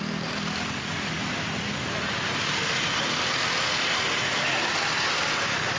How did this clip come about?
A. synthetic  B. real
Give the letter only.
B